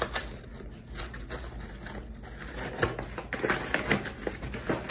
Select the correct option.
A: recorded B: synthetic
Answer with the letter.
A